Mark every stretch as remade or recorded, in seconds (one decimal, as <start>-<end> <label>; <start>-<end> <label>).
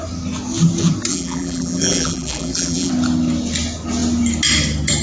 0.0-1.1 recorded; 1.1-2.9 remade; 2.9-5.0 recorded